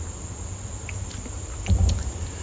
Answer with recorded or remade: recorded